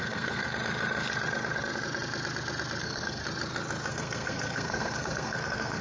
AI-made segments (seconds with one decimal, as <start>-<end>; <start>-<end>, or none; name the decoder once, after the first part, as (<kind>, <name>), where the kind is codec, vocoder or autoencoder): 0.0-0.5 (codec, SNAC); 2.8-3.2; 3.9-5.8